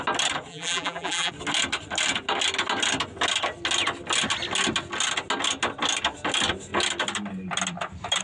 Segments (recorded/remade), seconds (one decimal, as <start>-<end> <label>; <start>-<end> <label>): 0.0-0.5 recorded; 0.5-1.3 remade; 1.3-8.2 recorded

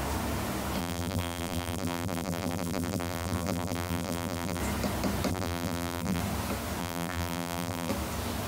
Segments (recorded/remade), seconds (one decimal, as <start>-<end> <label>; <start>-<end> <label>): 0.0-0.8 recorded; 0.8-4.6 remade; 4.6-5.3 recorded; 5.3-6.2 remade; 6.2-6.8 recorded; 6.8-7.9 remade; 7.9-8.5 recorded

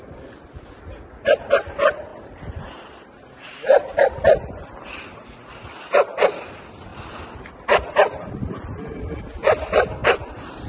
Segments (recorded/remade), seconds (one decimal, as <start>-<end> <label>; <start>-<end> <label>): 0.0-2.1 recorded; 2.1-2.9 remade; 2.9-10.7 recorded

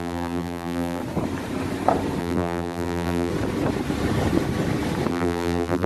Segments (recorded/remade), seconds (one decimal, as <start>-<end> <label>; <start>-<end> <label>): 0.0-1.0 remade; 1.0-2.2 recorded; 2.2-3.3 remade; 3.3-5.1 recorded; 5.1-5.9 remade

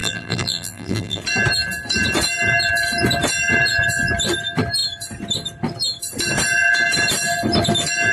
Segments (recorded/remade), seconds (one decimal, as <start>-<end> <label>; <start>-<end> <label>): 0.0-1.2 remade; 1.2-8.1 recorded

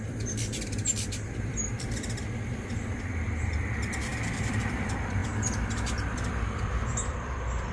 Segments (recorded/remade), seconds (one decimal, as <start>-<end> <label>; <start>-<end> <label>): 0.0-7.7 remade